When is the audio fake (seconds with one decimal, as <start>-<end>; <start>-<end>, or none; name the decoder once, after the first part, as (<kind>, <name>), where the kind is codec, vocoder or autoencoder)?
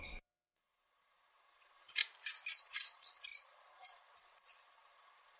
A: 0.0-2.0 (vocoder, Vocos); 2.6-5.4